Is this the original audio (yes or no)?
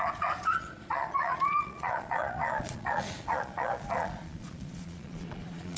no